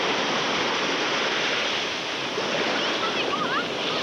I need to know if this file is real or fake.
real